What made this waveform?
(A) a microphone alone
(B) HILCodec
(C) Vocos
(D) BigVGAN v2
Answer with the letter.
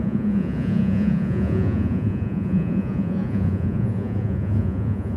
C